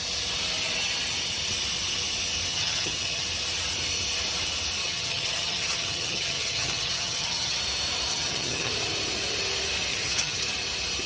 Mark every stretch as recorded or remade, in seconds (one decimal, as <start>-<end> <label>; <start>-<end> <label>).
0.0-2.5 recorded; 2.5-3.2 remade; 3.2-4.8 recorded; 4.8-7.6 remade; 7.6-8.1 recorded; 8.1-8.7 remade; 8.7-9.9 recorded; 9.9-10.4 remade; 10.4-11.1 recorded